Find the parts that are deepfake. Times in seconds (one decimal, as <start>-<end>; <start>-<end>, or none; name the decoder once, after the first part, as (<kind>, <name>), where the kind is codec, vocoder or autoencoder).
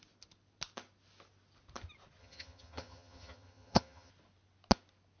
2.2-4.1 (vocoder, HiFi-GAN)